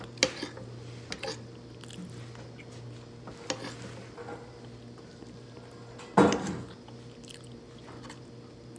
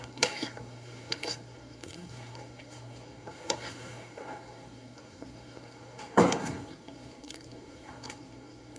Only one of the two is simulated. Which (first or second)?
second